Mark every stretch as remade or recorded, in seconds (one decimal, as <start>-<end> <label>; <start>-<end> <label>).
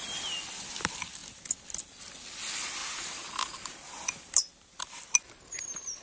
0.0-6.0 recorded